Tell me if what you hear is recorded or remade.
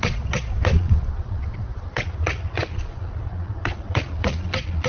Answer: remade